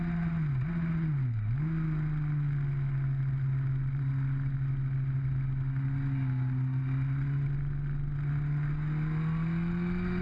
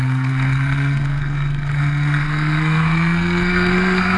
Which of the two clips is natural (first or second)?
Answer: first